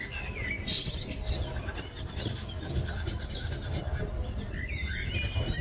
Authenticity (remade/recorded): recorded